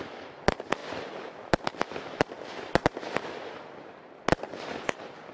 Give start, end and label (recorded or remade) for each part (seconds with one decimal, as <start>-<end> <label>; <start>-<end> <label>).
0.0-5.3 recorded

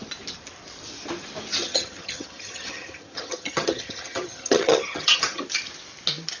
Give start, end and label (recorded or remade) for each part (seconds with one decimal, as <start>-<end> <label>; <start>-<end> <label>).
0.0-1.6 recorded; 1.6-5.4 remade; 5.4-6.4 recorded

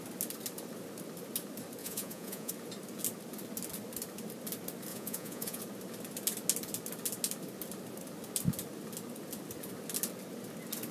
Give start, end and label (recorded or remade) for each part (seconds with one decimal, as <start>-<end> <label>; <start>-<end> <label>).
0.0-1.8 recorded; 1.8-2.5 remade; 2.5-4.9 recorded; 4.9-5.6 remade; 5.6-10.9 recorded

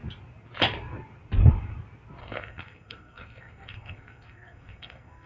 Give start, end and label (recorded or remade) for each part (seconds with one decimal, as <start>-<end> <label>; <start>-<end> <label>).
0.0-2.2 recorded; 2.2-5.3 remade